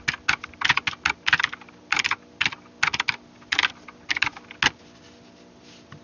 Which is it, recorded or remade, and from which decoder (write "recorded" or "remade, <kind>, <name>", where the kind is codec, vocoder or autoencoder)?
recorded